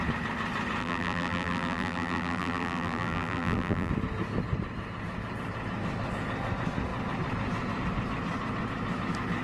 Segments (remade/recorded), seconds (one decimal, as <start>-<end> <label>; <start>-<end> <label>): 0.0-0.8 recorded; 0.8-3.9 remade; 3.9-9.4 recorded